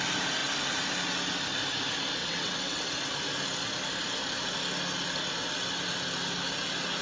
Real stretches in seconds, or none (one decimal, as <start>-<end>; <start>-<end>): 0.0-2.2; 2.9-7.0